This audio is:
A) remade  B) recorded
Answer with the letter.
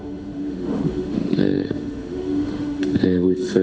A